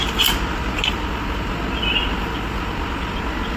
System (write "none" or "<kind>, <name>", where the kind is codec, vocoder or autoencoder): none